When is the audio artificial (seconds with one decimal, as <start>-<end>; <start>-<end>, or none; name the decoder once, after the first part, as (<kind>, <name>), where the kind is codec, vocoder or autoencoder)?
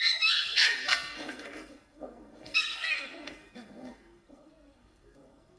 0.0-5.6 (codec, SNAC)